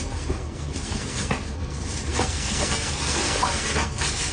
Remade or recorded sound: remade